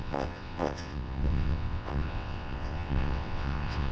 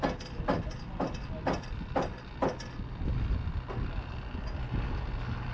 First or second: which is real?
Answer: second